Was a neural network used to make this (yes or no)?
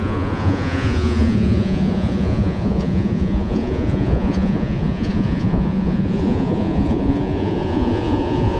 yes